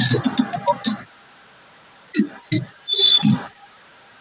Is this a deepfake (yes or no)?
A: no